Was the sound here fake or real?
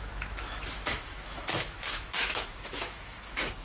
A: fake